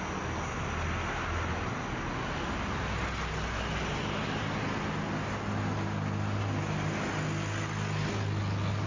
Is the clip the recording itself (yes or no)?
yes